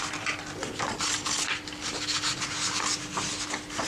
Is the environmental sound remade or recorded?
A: recorded